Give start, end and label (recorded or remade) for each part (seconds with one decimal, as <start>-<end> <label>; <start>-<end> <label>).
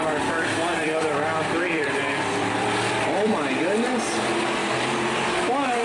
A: 0.0-0.8 recorded; 0.8-3.3 remade; 3.3-4.6 recorded; 4.6-5.2 remade; 5.2-5.8 recorded